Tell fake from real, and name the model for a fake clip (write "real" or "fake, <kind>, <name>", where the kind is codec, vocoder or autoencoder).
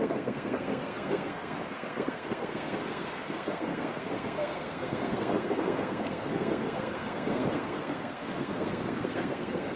fake, codec, SNAC